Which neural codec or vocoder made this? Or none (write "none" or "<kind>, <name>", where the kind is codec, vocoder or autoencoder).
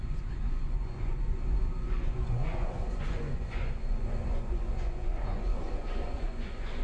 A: vocoder, Vocos